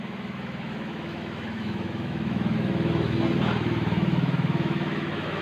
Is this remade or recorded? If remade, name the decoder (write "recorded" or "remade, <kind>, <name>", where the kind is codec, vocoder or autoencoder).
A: remade, autoencoder, DAC-VAE